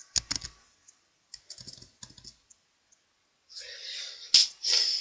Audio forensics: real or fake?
real